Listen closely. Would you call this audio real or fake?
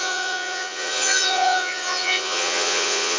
fake